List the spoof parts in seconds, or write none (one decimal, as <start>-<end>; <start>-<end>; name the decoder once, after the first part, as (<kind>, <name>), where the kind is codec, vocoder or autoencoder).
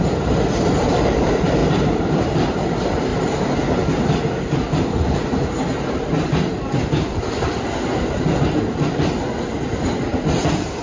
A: 0.0-3.1 (vocoder, BigVGAN v2); 8.4-10.8